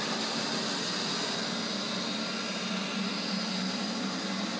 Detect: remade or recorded recorded